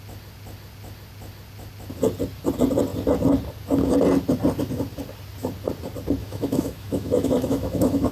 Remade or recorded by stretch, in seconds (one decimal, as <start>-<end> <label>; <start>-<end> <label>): 0.0-6.2 recorded; 6.2-8.1 remade